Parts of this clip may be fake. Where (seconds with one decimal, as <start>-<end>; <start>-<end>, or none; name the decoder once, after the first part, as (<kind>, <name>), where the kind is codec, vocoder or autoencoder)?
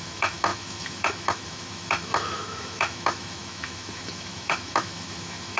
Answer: 0.0-5.6 (autoencoder, DAC-VAE)